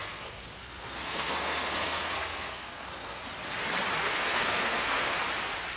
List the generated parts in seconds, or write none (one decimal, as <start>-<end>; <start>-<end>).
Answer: 0.0-3.2; 4.0-5.1